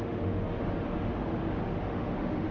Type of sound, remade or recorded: remade